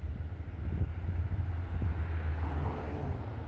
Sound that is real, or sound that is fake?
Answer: real